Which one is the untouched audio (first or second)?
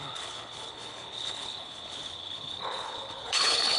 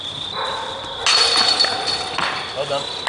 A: second